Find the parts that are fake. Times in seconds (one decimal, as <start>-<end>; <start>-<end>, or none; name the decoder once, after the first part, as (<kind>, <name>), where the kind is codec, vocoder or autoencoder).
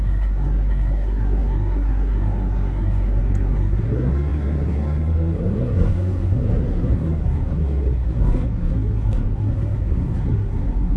0.0-11.0 (codec, SNAC)